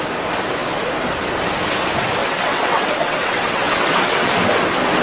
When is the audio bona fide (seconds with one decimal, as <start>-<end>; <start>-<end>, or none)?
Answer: 0.0-2.2; 4.3-5.0